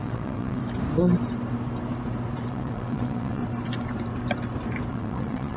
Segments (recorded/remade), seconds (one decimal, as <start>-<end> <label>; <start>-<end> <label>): 0.0-0.6 remade; 0.6-2.5 recorded; 2.5-3.4 remade; 3.4-4.9 recorded; 4.9-5.6 remade